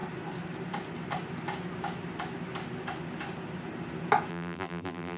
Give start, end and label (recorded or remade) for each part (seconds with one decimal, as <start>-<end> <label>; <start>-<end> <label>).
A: 0.0-4.3 recorded; 4.3-5.2 remade